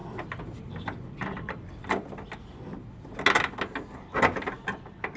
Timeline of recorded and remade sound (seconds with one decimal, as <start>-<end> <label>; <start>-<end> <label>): 0.0-1.3 recorded; 1.3-1.8 remade; 1.8-5.2 recorded